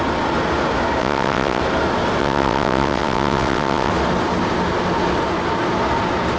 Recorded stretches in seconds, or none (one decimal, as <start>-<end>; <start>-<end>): 0.0-1.0; 1.6-2.2; 3.9-6.4